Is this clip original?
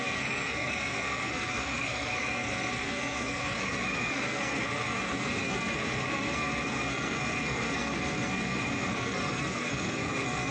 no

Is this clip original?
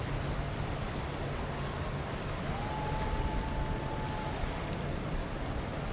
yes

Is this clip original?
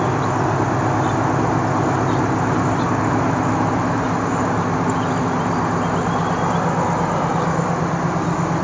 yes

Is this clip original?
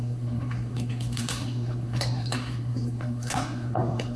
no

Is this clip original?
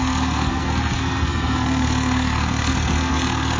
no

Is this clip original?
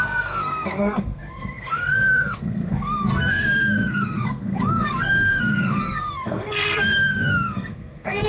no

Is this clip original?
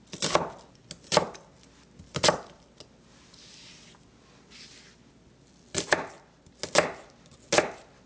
yes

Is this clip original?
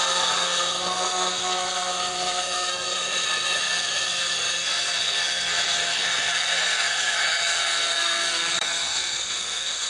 no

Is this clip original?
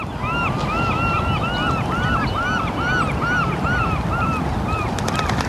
yes